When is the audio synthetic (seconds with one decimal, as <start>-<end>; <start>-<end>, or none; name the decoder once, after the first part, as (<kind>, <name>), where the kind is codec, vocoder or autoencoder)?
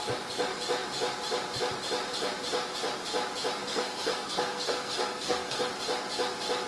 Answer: 3.6-5.7 (codec, SNAC)